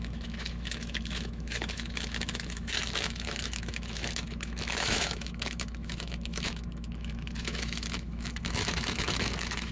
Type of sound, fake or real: fake